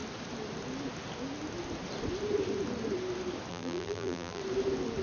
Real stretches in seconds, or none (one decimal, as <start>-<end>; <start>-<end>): 0.0-3.5; 4.4-5.0